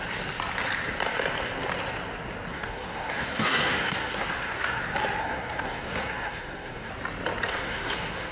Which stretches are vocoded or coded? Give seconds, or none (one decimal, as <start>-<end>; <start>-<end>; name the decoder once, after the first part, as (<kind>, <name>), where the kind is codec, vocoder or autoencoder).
2.5-4.8 (codec, SNAC); 5.2-6.9; 7.5-8.3